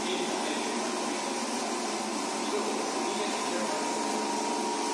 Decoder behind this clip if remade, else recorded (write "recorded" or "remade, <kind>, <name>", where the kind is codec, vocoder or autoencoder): recorded